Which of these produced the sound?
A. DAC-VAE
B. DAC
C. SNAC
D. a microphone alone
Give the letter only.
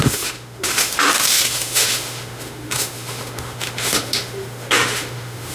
A